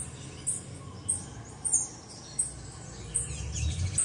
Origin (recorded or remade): recorded